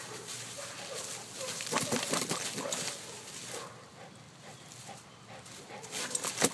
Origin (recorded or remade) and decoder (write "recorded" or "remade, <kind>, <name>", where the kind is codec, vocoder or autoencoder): recorded